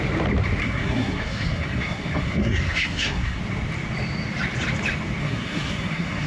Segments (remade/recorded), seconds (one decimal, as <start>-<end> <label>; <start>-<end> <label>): 0.0-0.6 recorded; 0.6-3.4 remade; 3.4-5.2 recorded; 5.2-6.3 remade